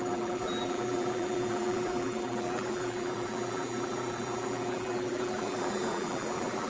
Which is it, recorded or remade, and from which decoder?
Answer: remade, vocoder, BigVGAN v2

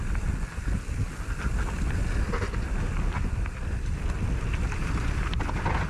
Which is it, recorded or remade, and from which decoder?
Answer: recorded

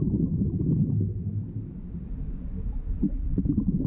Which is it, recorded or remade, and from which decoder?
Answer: recorded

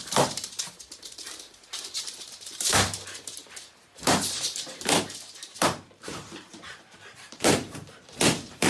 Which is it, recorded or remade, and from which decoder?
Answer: remade, vocoder, BigVGAN v2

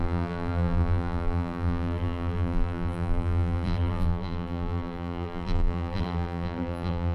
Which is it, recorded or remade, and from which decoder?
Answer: remade, vocoder, BigVGAN v2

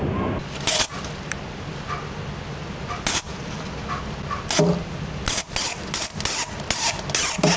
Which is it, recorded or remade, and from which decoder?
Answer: recorded